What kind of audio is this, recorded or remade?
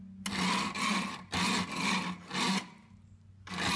recorded